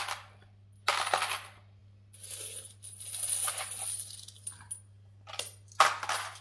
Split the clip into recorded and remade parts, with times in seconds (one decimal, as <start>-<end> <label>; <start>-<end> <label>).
0.0-6.4 recorded